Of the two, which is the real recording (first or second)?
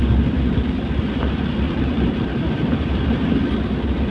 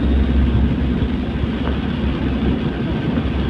second